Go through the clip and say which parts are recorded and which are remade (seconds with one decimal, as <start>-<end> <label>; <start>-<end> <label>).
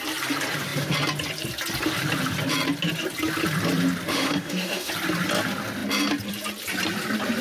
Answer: 0.0-4.1 recorded; 4.1-4.9 remade; 4.9-7.4 recorded